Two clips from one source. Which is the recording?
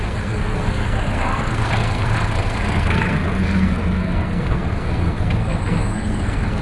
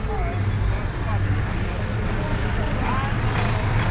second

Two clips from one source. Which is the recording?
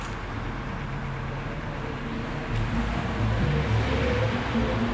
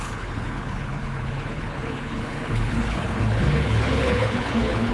first